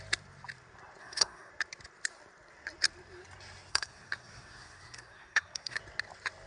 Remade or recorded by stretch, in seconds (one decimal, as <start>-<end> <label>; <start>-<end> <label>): 0.0-1.0 recorded; 1.0-1.5 remade; 1.5-3.7 recorded; 3.7-5.8 remade; 5.8-6.5 recorded